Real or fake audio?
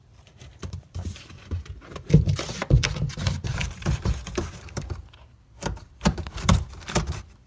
fake